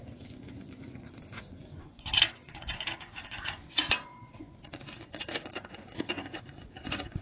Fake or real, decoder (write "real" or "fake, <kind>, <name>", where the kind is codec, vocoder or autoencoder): fake, vocoder, Vocos